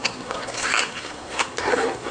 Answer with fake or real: fake